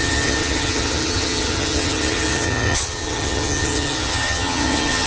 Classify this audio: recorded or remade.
remade